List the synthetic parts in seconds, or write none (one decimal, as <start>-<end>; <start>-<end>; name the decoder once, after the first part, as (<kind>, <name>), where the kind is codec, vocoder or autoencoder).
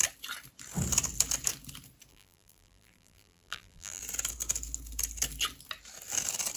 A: 2.1-4.0 (vocoder, BigVGAN v2)